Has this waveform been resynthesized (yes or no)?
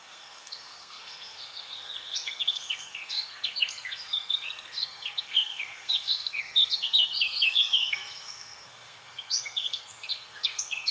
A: yes